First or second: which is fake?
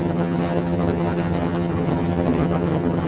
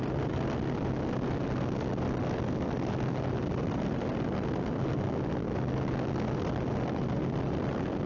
first